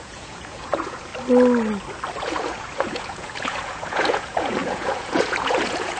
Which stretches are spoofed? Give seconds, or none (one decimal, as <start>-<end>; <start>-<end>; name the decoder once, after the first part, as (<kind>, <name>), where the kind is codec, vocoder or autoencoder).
0.0-1.1 (vocoder, Vocos); 2.2-6.0